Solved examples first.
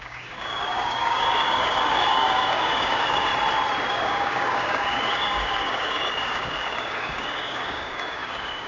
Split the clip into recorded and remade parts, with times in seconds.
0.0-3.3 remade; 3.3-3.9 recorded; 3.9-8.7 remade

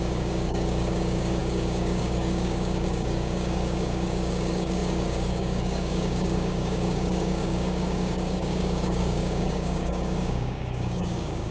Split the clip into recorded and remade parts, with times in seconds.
0.0-11.5 remade

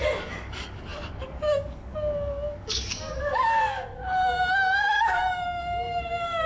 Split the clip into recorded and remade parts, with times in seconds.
0.0-4.0 remade; 4.0-4.8 recorded; 4.8-6.5 remade